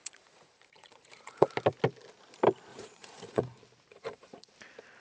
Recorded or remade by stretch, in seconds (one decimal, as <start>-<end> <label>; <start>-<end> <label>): 0.0-1.5 remade; 1.5-2.7 recorded; 2.7-3.4 remade; 3.4-3.9 recorded; 3.9-4.5 remade; 4.5-5.0 recorded